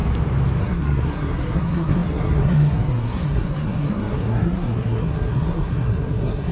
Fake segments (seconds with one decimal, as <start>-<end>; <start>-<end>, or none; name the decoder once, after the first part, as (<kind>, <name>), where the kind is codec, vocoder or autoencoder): 0.6-6.5 (codec, SNAC)